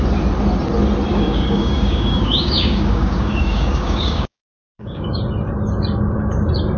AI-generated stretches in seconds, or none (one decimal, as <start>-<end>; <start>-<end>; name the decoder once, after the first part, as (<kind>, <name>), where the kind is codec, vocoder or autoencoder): 1.1-5.2 (codec, DAC)